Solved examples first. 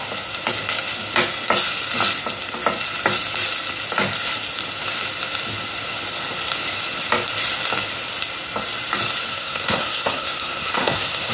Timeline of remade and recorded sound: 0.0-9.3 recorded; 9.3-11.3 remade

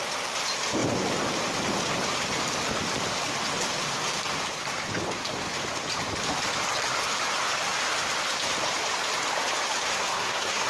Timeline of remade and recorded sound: 0.0-9.9 recorded; 9.9-10.7 remade

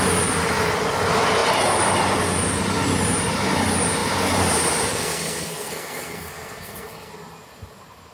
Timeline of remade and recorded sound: 0.0-4.9 recorded; 4.9-7.1 remade; 7.1-8.1 recorded

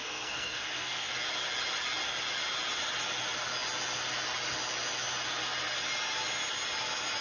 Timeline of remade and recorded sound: 0.0-1.1 remade; 1.1-7.2 recorded

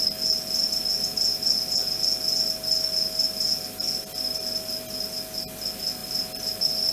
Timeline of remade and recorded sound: 0.0-6.9 recorded

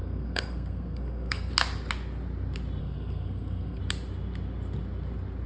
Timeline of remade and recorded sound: 0.0-1.5 remade; 1.5-2.8 recorded; 2.8-3.8 remade; 3.8-5.5 recorded

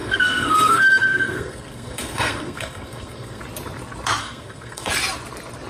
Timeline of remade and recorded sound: 0.0-3.4 remade; 3.4-4.2 recorded; 4.2-4.9 remade; 4.9-5.7 recorded

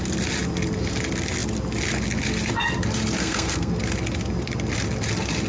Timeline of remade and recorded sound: 0.0-3.2 recorded; 3.2-3.7 remade; 3.7-5.5 recorded